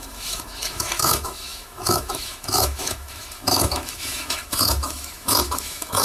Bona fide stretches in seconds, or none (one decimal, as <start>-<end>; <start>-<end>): none